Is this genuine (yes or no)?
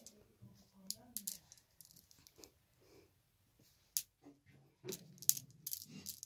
yes